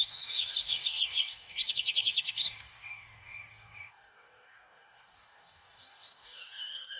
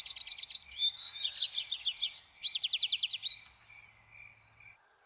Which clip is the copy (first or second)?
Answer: first